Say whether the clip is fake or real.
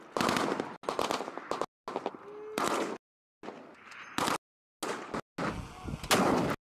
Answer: real